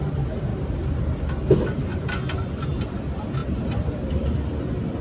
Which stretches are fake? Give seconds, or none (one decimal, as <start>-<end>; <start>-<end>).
0.5-1.0; 3.4-4.2